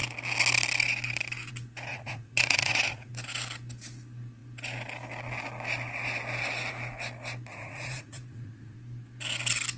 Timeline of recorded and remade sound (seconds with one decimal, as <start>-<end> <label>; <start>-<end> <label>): 0.0-1.9 recorded; 1.9-3.1 remade; 3.1-7.5 recorded; 7.5-8.8 remade; 8.8-9.8 recorded

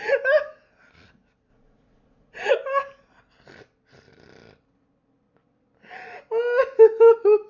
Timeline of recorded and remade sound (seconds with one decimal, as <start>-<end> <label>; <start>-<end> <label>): 0.0-1.5 recorded; 1.5-2.5 remade; 2.5-7.5 recorded

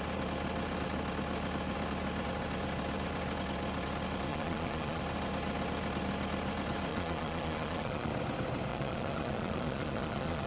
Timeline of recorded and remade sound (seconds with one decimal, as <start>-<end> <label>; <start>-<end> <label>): 0.0-4.3 recorded; 4.3-5.0 remade; 5.0-6.9 recorded; 6.9-8.1 remade; 8.1-8.7 recorded; 8.7-10.5 remade

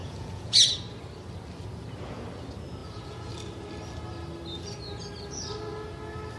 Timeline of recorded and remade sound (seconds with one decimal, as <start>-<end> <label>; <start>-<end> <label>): 0.0-0.6 remade; 0.6-2.8 recorded; 2.8-3.3 remade; 3.3-6.4 recorded

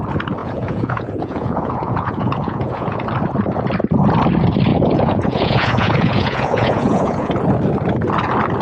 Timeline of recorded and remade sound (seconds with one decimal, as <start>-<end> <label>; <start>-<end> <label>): 0.0-0.4 recorded; 0.4-3.0 remade; 3.0-4.7 recorded; 4.7-7.3 remade; 7.3-8.6 recorded

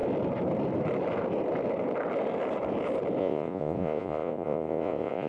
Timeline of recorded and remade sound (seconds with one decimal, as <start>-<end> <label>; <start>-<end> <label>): 0.0-3.2 recorded; 3.2-5.3 remade

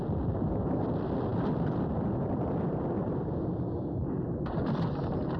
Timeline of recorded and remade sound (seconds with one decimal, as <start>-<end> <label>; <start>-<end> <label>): 0.0-5.4 recorded

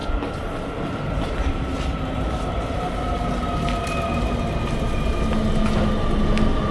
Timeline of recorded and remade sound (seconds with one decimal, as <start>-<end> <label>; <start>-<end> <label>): 0.0-6.7 recorded